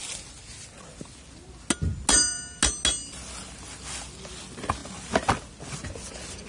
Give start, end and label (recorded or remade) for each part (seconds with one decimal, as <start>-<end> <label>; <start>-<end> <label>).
0.0-6.5 recorded